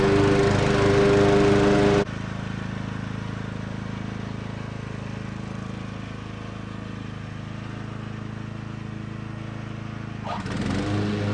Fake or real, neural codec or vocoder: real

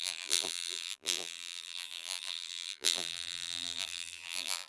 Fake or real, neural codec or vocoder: fake, vocoder, BigVGAN v2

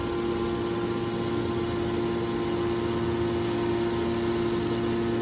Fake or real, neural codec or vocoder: real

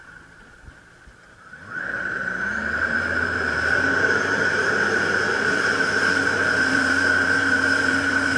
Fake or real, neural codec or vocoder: fake, vocoder, BigVGAN v2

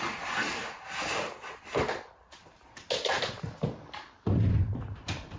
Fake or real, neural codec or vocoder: real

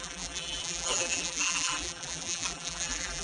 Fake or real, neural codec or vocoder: fake, vocoder, BigVGAN v2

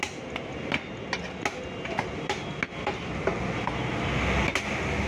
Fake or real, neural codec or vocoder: real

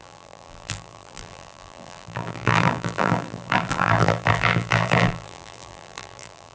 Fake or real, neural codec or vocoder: fake, vocoder, BigVGAN v2